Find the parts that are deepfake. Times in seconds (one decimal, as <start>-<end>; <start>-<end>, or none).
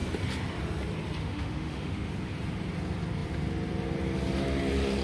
1.2-2.1